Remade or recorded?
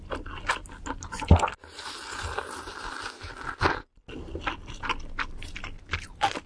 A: recorded